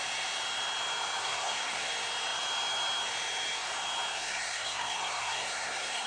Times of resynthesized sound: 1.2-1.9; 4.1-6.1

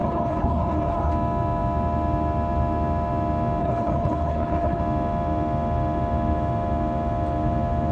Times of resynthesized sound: 0.0-1.1; 3.6-4.8

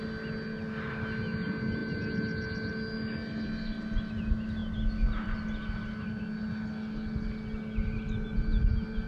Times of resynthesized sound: none

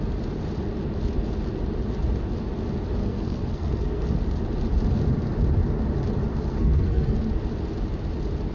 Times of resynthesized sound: 3.0-4.1; 6.3-7.3

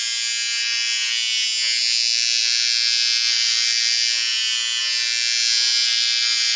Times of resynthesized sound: none